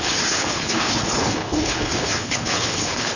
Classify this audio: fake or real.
fake